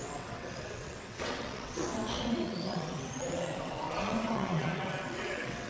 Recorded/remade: remade